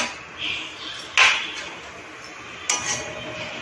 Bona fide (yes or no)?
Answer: yes